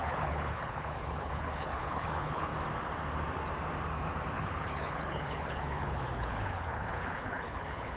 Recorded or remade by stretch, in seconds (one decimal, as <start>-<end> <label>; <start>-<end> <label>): 0.0-2.5 remade; 2.5-4.3 recorded; 4.3-8.0 remade